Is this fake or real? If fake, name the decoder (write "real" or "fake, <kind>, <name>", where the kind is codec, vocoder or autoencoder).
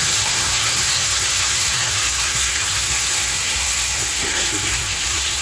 fake, codec, SNAC